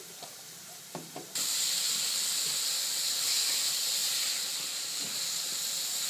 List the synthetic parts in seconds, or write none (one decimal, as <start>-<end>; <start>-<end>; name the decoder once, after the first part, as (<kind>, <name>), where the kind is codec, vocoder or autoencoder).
none